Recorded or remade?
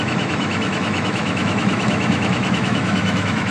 remade